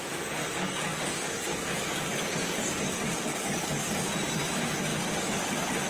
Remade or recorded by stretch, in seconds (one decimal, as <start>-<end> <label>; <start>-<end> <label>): 0.0-0.4 recorded; 0.4-3.9 remade; 3.9-4.9 recorded; 4.9-5.5 remade; 5.5-5.9 recorded